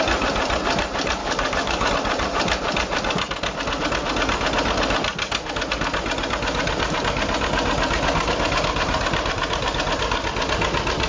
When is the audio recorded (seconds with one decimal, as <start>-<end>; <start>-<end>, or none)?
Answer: 0.0-1.2; 1.9-11.1